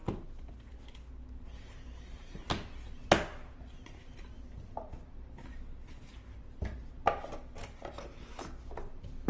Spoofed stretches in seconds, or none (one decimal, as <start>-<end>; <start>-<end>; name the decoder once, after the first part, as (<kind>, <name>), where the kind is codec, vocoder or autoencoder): none